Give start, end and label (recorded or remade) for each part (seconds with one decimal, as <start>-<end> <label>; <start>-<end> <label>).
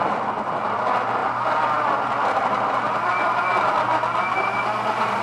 0.0-5.2 recorded